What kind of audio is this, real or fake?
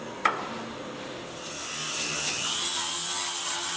real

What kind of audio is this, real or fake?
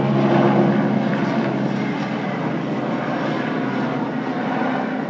real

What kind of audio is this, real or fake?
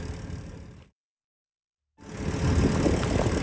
real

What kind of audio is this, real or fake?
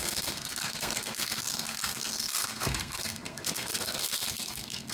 fake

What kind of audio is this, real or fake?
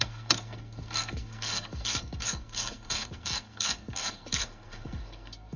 fake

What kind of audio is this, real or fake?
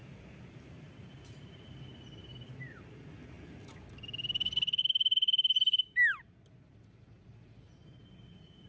real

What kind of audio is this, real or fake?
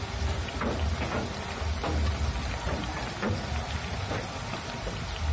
real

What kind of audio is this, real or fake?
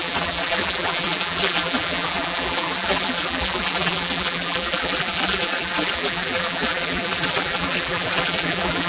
fake